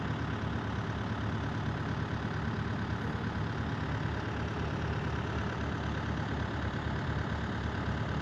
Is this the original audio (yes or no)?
yes